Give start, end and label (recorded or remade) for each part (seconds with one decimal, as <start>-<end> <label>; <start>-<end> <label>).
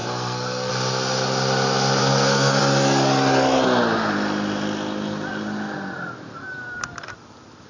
0.0-0.7 remade; 0.7-2.0 recorded; 2.0-2.6 remade; 2.6-7.7 recorded